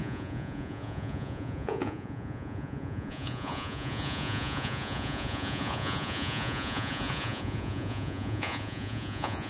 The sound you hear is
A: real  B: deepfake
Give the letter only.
B